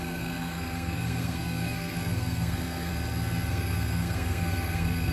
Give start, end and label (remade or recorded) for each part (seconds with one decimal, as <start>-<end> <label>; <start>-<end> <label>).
0.0-2.9 remade; 2.9-3.5 recorded; 3.5-5.1 remade